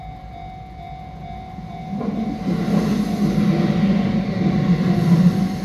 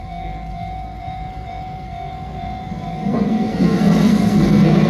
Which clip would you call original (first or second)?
first